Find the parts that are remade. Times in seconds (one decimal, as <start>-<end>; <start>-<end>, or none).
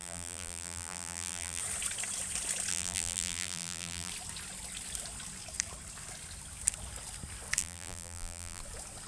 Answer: 0.0-1.6; 2.7-4.1; 7.6-8.6